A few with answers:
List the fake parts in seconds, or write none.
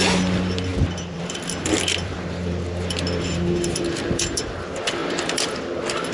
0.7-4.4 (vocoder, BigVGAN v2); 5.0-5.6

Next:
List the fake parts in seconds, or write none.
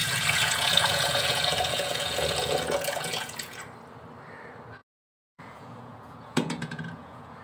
0.0-3.6 (vocoder, Vocos); 4.8-7.4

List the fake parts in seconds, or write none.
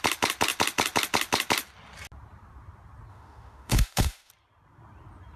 3.1-4.3 (autoencoder, DAC-VAE)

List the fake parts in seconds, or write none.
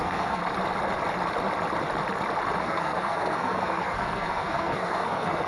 0.0-0.4 (codec, SNAC); 2.6-5.5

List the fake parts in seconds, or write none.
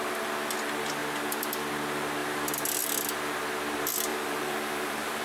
4.1-5.2 (vocoder, BigVGAN v2)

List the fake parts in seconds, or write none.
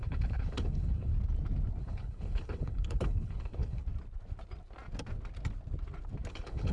0.0-1.1 (codec, HILCodec); 1.8-3.8; 6.3-6.7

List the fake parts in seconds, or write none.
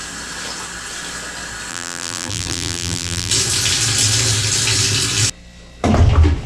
1.7-3.3 (vocoder, BigVGAN v2)